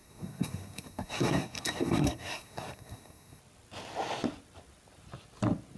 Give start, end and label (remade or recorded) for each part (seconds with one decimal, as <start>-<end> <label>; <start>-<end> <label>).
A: 0.0-3.4 remade; 3.4-5.8 recorded